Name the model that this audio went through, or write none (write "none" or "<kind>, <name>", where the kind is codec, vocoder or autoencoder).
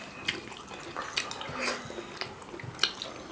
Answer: none